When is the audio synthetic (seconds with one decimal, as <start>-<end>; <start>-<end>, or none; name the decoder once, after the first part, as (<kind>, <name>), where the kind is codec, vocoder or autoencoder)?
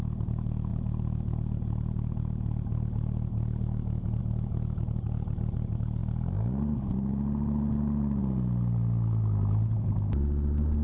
none